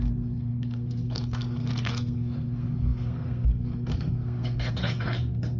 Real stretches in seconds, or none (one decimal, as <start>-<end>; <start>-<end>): none